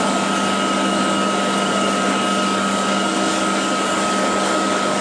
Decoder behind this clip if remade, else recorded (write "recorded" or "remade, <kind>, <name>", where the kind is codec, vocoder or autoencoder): remade, codec, DAC